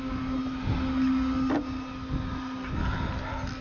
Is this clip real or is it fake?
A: real